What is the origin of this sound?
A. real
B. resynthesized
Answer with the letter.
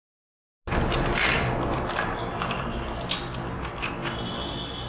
A